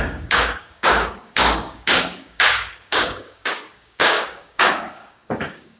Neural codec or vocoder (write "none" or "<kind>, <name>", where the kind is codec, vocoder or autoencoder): codec, DAC